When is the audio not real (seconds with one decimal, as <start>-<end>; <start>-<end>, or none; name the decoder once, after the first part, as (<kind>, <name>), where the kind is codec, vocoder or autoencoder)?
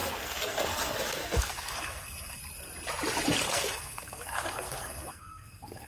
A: 0.0-2.4 (codec, SNAC); 3.5-5.9